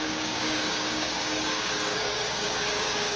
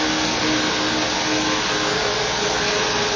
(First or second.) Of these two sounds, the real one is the second